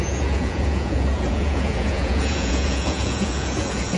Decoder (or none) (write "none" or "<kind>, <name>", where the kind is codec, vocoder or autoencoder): vocoder, Vocos